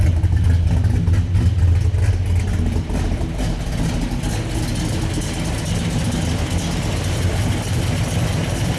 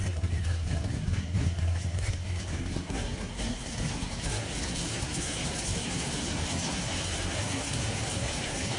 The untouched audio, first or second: first